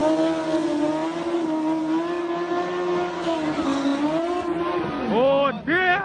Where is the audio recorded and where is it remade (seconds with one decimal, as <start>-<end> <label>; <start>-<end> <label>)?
0.0-6.0 recorded